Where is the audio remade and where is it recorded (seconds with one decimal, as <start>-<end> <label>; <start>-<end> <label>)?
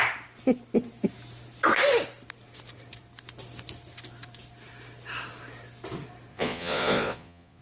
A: 0.0-6.3 recorded; 6.3-7.6 remade